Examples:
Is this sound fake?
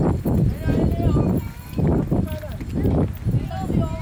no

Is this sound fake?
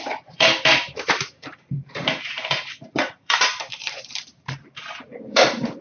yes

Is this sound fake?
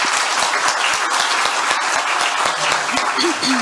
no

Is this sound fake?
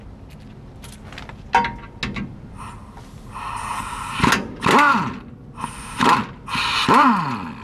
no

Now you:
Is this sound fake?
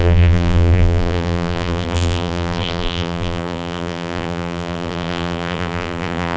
yes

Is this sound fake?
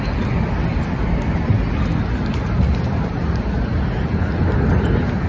no